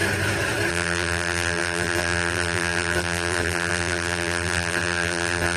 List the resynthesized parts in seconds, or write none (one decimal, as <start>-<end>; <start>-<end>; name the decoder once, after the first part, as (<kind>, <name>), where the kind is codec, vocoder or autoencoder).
0.7-5.6 (vocoder, BigVGAN v2)